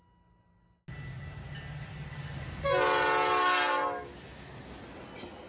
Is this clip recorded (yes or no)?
yes